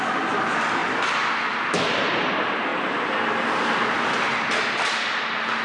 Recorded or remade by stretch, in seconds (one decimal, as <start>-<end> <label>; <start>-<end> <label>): 0.0-5.6 recorded